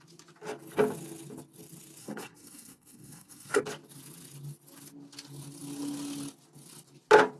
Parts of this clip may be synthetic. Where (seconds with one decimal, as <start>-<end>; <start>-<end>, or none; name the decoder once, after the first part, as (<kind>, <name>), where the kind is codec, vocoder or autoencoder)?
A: 2.0-3.6 (codec, SNAC)